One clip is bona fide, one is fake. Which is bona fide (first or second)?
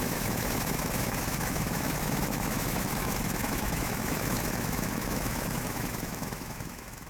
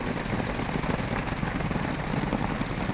second